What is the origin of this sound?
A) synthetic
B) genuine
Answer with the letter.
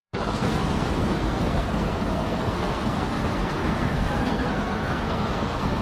A